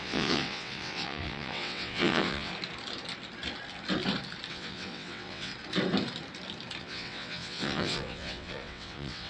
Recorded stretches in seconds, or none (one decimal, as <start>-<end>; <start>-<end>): 2.5-4.5; 5.5-6.8